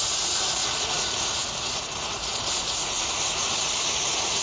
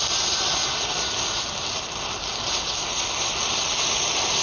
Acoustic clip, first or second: second